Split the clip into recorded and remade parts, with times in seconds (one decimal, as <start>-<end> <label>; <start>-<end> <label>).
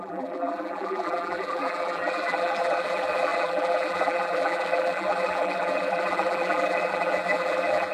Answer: 0.0-7.9 remade